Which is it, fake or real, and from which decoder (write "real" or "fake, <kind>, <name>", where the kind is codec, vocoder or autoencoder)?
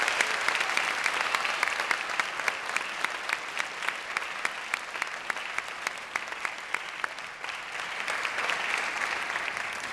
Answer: real